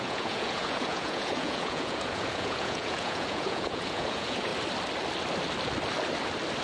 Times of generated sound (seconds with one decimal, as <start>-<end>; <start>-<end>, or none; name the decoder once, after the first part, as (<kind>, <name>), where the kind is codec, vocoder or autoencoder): 0.0-4.5 (vocoder, Vocos)